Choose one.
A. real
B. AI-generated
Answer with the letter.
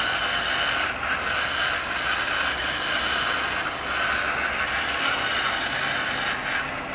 A